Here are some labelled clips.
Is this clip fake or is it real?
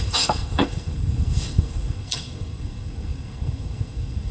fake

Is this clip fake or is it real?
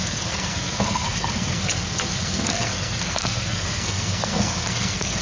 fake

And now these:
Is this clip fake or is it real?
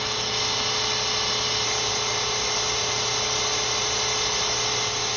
real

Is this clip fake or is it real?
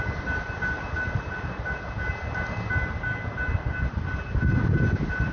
real